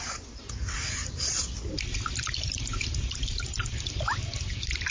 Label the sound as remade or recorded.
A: recorded